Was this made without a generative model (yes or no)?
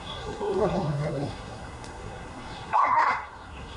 no